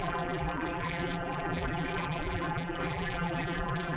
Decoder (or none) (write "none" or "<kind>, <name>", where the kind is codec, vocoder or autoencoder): vocoder, BigVGAN v2